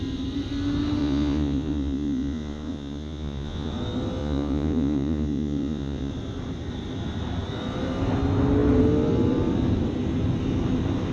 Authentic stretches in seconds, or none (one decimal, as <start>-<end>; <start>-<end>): 0.0-1.0; 3.7-4.2; 6.1-11.1